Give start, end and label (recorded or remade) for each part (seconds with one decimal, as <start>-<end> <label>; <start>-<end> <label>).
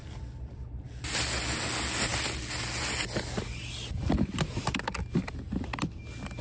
0.0-6.4 recorded